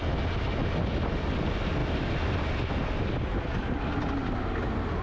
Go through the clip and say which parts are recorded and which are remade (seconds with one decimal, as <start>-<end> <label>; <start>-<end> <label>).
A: 0.0-5.0 recorded